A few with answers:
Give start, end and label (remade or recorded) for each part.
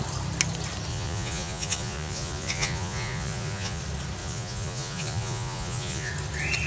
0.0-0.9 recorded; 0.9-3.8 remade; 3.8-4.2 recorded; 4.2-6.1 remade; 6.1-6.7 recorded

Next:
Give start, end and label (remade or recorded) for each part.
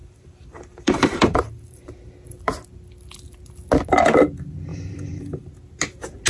0.0-2.1 remade; 2.1-4.7 recorded; 4.7-5.5 remade; 5.5-6.3 recorded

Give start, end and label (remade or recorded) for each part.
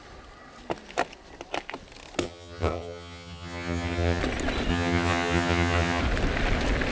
0.0-2.2 recorded; 2.2-4.2 remade; 4.2-4.7 recorded; 4.7-6.0 remade; 6.0-6.9 recorded